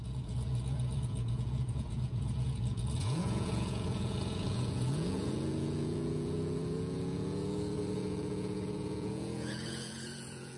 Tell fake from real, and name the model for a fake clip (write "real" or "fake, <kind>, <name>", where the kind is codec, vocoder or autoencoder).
fake, vocoder, Vocos